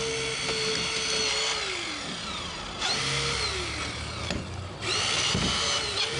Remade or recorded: recorded